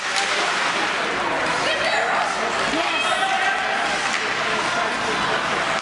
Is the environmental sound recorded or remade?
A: recorded